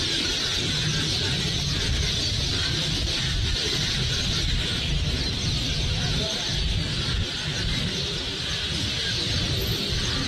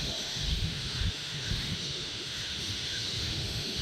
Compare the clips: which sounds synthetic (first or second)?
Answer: second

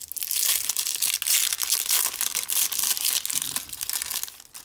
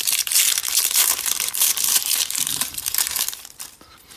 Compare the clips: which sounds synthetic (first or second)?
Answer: second